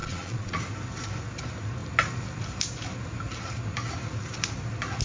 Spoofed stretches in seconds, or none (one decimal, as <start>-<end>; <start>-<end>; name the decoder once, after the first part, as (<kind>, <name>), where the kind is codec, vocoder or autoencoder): 0.0-0.6 (vocoder, Vocos)